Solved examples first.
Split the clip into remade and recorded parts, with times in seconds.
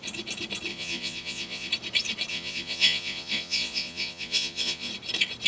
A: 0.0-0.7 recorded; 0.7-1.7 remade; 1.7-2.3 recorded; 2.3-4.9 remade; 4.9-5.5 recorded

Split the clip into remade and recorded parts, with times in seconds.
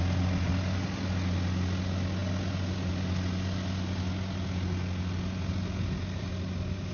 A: 0.0-6.9 recorded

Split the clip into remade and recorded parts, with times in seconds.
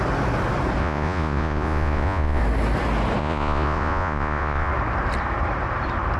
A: 0.0-0.8 recorded; 0.8-2.4 remade; 2.4-3.2 recorded; 3.2-4.7 remade; 4.7-6.2 recorded